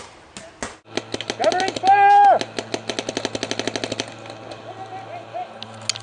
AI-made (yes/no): no